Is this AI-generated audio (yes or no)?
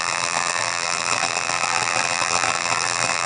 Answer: yes